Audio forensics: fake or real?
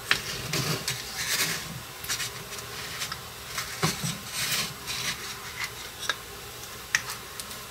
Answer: real